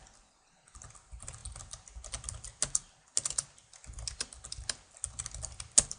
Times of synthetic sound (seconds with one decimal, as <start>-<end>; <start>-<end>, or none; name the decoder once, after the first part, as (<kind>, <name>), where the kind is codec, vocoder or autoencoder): none